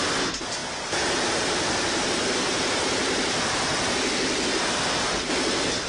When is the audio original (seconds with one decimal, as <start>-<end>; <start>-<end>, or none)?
0.6-1.3